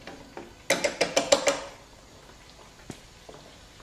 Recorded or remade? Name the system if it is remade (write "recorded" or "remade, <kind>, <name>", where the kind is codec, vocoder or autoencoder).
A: recorded